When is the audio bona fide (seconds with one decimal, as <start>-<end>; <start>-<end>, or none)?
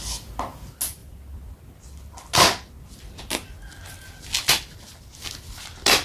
0.0-6.0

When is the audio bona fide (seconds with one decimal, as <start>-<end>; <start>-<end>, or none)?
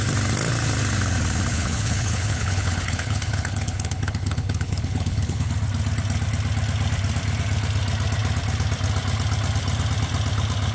0.0-1.5; 5.5-10.7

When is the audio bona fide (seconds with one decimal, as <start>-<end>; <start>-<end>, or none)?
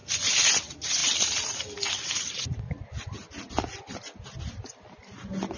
0.0-5.6